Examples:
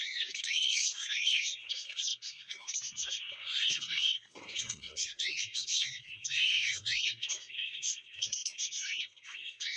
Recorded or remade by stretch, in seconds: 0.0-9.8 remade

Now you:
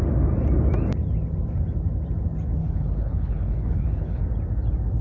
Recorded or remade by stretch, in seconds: 0.0-2.6 recorded; 2.6-4.2 remade; 4.2-5.0 recorded

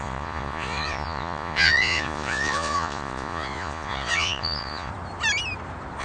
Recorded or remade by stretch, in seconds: 0.0-4.9 remade; 4.9-6.0 recorded